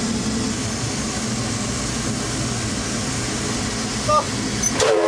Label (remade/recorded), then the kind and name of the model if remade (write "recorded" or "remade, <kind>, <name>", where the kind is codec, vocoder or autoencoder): recorded